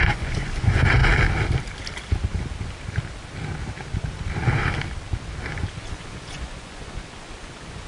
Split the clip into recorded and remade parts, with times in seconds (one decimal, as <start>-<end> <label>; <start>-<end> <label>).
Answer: 0.0-1.0 remade; 1.0-5.7 recorded; 5.7-7.9 remade